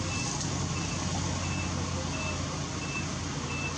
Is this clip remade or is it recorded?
recorded